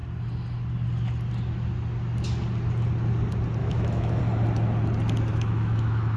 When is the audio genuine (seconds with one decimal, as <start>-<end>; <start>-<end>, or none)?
0.0-3.6; 4.2-5.3